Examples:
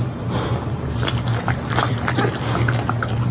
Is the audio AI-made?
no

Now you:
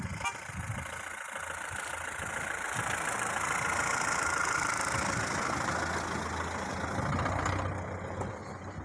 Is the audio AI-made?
no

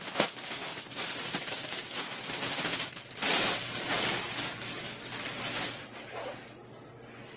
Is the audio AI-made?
no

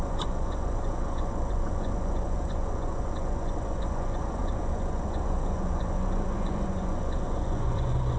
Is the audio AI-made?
yes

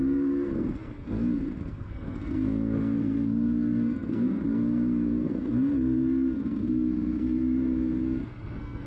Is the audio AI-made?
yes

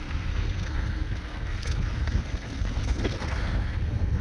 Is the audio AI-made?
yes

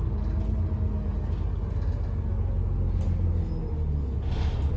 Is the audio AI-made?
no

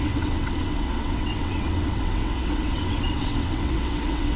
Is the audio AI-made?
yes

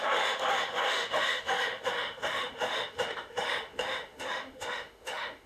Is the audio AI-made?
yes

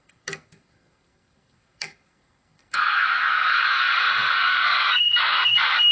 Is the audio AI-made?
yes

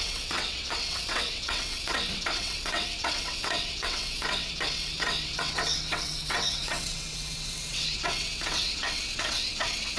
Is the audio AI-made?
yes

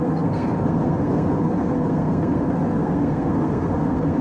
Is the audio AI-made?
yes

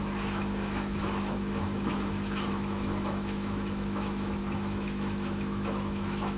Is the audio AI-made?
yes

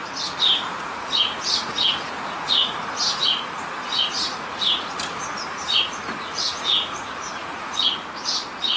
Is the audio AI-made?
yes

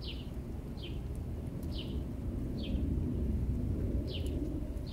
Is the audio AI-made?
no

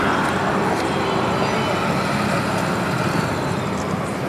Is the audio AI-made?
no